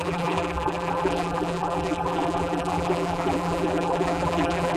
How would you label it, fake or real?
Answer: fake